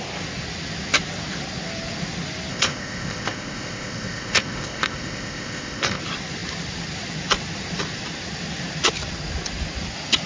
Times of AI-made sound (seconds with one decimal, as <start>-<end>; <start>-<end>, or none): 2.5-6.0